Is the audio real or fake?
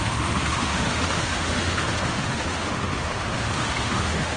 fake